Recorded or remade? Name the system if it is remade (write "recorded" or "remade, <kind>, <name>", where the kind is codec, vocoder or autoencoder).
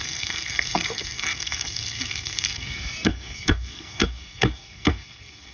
remade, codec, SNAC